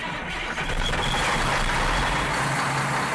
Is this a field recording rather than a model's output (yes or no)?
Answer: yes